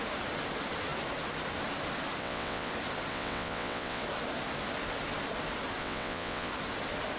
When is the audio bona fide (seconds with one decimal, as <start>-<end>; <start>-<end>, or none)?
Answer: 0.0-2.2; 2.7-3.1; 4.0-5.8; 6.5-7.2